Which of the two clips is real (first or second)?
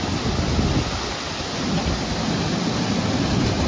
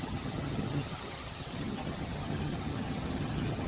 first